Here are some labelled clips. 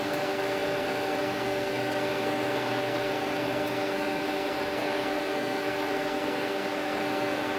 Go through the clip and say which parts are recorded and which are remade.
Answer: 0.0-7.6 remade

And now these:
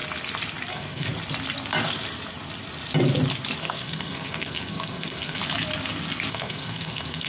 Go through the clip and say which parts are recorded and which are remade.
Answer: 0.0-0.7 recorded; 0.7-1.1 remade; 1.1-3.6 recorded; 3.6-5.4 remade; 5.4-6.3 recorded; 6.3-7.3 remade

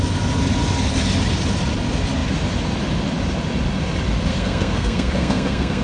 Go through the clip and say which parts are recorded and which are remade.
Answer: 0.0-4.3 recorded; 4.3-5.8 remade

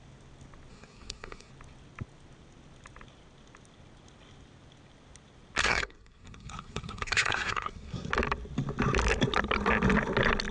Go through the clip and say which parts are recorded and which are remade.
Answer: 0.0-0.7 recorded; 0.7-1.5 remade; 1.5-5.6 recorded; 5.6-8.1 remade; 8.1-10.5 recorded